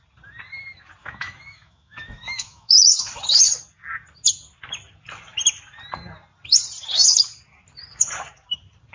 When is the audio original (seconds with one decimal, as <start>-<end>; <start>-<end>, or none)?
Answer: 0.0-1.0; 3.0-8.9